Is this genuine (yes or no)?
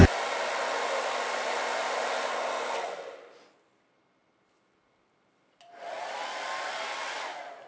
yes